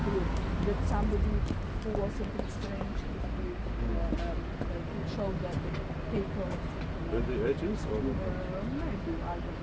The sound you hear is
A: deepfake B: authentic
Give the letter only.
B